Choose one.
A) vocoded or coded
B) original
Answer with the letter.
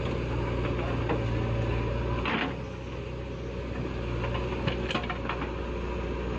B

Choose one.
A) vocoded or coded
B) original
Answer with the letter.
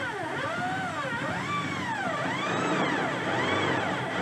B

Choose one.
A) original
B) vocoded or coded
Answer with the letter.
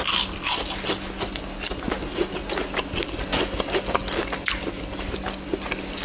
A